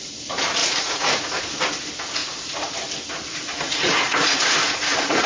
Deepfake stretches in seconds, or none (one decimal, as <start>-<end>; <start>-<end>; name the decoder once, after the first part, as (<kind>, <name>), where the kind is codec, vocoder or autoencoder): 0.6-1.5 (vocoder, Vocos); 2.2-2.7; 3.3-5.3